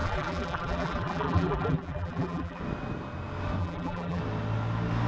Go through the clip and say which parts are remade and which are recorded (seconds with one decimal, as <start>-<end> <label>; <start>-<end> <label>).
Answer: 0.0-2.6 remade; 2.6-3.6 recorded; 3.6-4.2 remade; 4.2-5.1 recorded